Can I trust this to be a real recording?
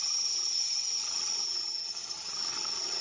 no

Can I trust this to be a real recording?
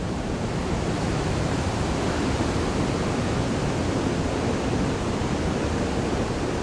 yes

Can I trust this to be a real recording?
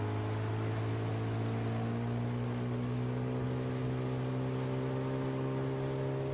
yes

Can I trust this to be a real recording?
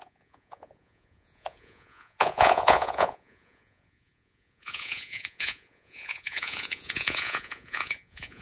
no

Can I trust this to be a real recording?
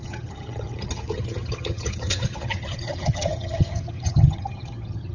no